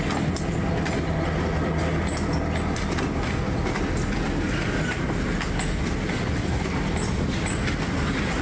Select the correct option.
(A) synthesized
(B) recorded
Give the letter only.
B